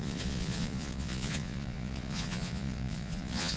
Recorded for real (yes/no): no